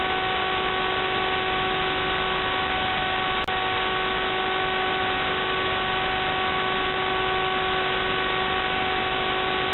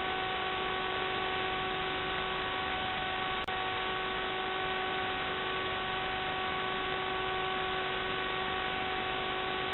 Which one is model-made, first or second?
second